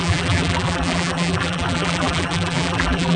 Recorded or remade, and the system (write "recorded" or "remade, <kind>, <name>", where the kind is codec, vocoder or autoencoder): remade, vocoder, BigVGAN v2